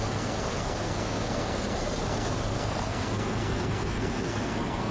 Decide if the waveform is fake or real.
fake